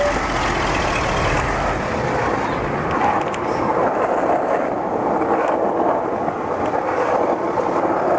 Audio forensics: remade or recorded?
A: recorded